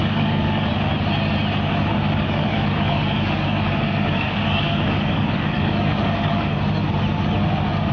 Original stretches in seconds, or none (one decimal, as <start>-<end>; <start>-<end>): 0.7-1.9; 6.6-7.9